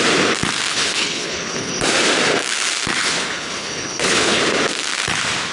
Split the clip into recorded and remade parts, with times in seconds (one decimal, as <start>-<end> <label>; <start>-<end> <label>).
0.0-0.7 recorded; 0.7-1.7 remade; 1.7-3.0 recorded; 3.0-4.4 remade; 4.4-5.5 recorded